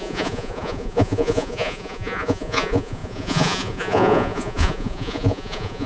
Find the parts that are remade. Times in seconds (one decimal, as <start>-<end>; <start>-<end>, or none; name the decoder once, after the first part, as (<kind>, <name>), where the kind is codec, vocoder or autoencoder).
0.0-5.9 (vocoder, Vocos)

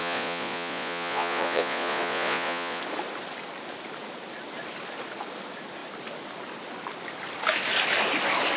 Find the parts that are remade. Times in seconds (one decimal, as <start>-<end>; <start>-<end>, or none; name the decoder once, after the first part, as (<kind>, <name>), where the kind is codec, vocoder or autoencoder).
0.0-2.8 (vocoder, Vocos)

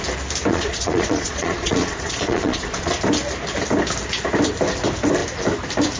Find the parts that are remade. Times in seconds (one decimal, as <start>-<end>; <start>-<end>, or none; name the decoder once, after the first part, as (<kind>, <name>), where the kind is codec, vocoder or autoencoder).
0.5-2.9 (vocoder, Vocos)

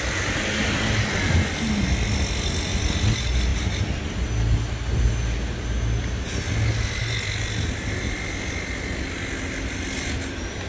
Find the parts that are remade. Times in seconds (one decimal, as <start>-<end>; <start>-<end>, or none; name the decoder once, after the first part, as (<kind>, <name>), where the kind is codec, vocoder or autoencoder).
none

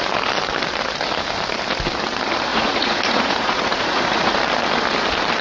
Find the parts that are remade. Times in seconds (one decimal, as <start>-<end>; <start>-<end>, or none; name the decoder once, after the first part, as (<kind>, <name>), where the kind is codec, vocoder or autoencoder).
2.5-4.3 (vocoder, Vocos)

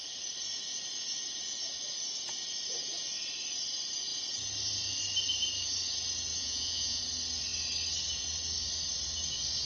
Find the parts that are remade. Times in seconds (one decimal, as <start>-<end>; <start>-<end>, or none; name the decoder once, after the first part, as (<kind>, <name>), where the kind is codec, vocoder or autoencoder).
6.3-7.0 (vocoder, Vocos)